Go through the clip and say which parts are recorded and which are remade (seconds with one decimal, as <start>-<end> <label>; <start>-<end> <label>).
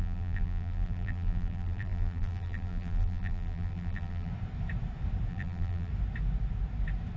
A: 0.0-4.3 remade; 4.3-5.3 recorded; 5.3-5.9 remade; 5.9-7.2 recorded